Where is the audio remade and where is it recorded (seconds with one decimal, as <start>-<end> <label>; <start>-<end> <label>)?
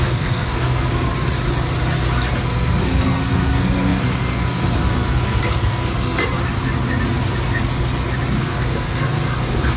0.0-1.1 remade; 1.1-2.3 recorded; 2.3-6.2 remade; 6.2-8.4 recorded; 8.4-9.8 remade